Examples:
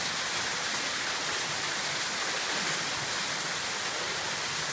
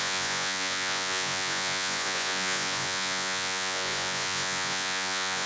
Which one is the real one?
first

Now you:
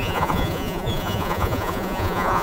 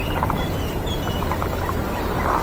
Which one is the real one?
second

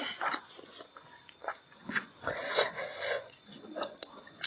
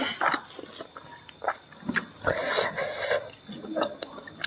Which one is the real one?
second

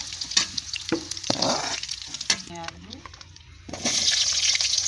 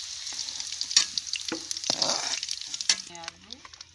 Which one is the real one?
second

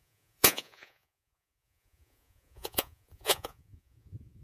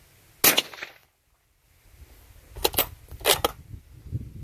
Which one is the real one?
second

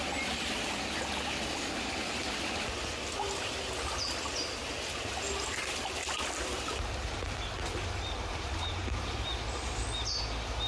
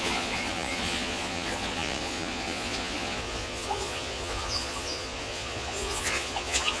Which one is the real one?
first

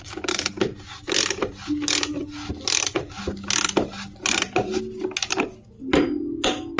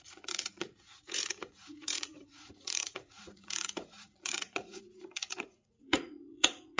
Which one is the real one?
first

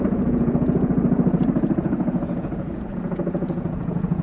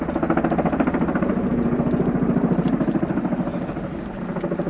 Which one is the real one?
second